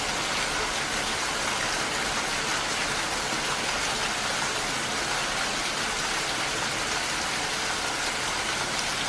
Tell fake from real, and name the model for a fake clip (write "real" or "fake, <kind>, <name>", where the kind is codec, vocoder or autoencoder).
real